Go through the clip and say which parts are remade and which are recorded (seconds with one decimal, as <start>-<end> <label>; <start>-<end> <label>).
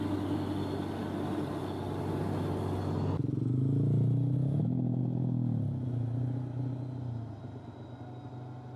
0.0-8.8 recorded